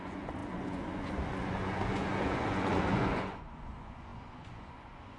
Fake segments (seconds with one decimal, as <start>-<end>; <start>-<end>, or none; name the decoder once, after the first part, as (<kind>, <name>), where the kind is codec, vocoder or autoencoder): 0.0-5.2 (vocoder, Vocos)